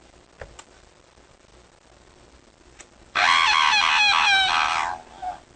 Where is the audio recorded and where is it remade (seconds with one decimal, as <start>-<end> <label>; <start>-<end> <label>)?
0.0-5.6 recorded